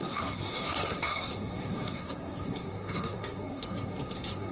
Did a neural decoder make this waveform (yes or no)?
yes